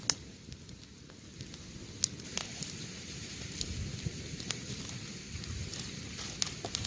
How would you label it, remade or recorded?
recorded